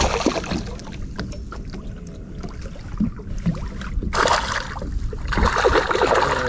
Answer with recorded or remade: recorded